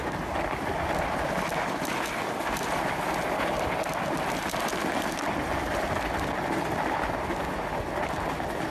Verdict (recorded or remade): recorded